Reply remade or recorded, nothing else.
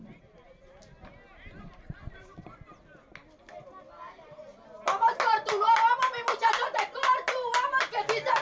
recorded